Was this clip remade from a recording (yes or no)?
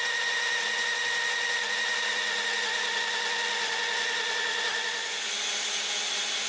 no